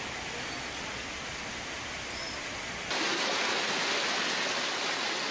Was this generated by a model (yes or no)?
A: no